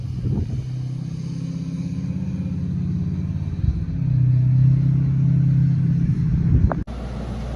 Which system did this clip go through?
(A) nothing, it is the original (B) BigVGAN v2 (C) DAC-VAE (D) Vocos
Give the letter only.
A